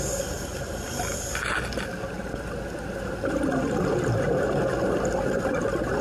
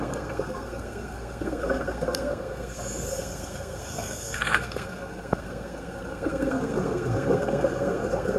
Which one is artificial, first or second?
second